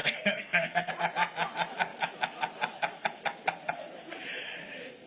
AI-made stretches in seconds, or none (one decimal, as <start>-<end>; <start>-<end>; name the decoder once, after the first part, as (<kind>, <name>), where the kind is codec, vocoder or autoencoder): 0.0-0.9 (codec, SNAC)